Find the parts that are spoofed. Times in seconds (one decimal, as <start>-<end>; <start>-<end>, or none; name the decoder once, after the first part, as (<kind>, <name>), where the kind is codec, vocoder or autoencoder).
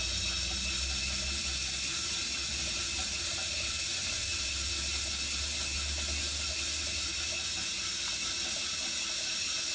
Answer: none